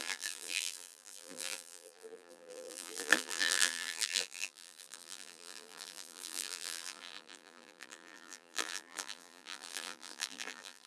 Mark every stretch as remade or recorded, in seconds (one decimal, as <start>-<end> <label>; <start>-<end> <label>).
0.0-10.9 remade